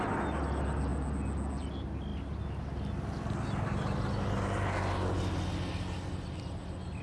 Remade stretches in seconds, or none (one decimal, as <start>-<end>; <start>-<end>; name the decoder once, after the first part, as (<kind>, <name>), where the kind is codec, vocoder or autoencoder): none